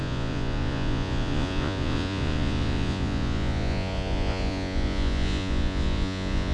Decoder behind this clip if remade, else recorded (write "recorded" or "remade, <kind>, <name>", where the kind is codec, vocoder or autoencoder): remade, vocoder, Vocos